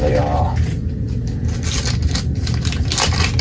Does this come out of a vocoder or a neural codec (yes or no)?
no